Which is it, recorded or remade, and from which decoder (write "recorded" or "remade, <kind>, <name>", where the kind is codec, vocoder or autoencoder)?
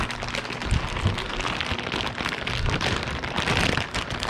recorded